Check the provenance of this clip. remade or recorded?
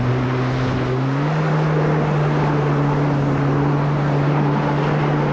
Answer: recorded